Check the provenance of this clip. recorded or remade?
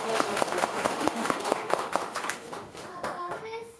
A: remade